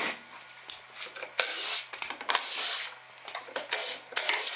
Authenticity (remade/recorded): recorded